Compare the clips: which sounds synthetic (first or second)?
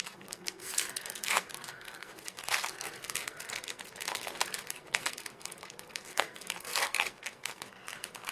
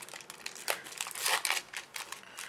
first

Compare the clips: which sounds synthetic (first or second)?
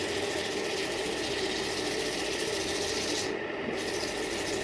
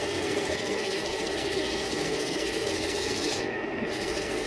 second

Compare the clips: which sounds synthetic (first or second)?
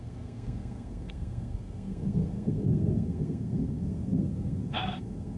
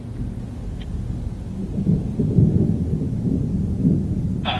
first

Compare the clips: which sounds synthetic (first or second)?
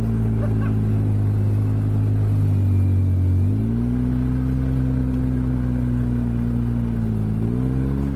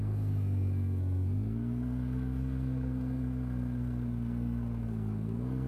second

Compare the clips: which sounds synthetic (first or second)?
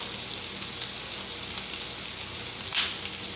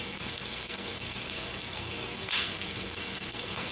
second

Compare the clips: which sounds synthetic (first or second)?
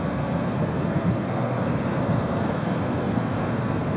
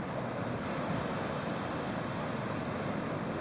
first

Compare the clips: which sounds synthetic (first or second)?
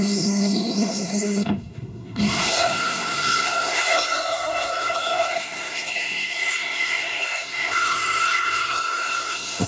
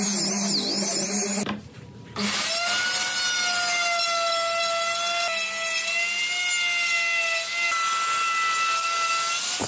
first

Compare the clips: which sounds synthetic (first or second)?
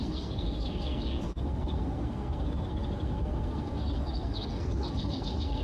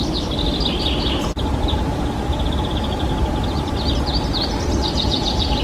first